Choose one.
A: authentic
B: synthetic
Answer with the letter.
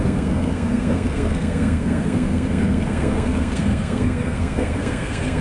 B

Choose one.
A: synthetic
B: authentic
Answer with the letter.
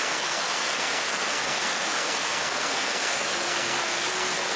A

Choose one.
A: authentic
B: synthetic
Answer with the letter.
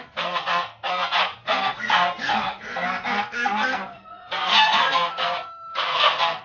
B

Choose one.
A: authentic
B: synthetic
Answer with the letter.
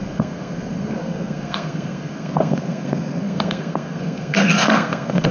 B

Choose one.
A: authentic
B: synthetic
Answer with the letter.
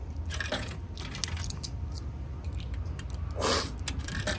A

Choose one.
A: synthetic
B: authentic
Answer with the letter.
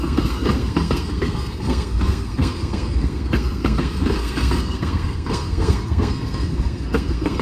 A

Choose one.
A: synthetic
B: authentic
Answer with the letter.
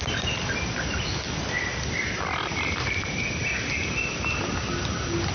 B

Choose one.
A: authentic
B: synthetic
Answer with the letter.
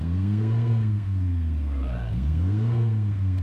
B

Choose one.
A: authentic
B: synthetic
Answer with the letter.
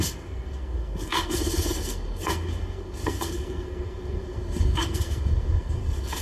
B